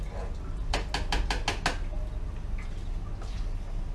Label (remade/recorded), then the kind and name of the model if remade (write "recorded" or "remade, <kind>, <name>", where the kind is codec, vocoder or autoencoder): recorded